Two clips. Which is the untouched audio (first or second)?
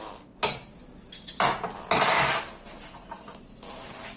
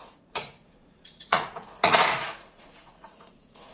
first